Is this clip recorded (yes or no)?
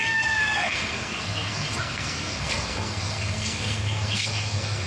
no